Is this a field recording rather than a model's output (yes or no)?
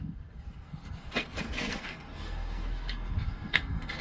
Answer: no